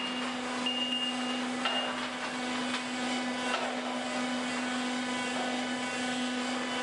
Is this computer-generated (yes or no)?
no